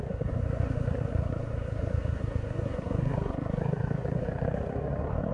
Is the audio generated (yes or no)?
yes